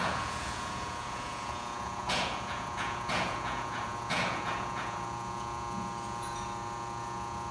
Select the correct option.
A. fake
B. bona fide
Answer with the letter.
A